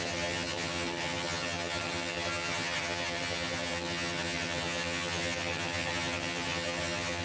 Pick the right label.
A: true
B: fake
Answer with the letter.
B